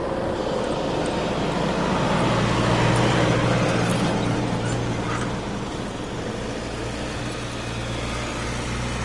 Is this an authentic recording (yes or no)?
yes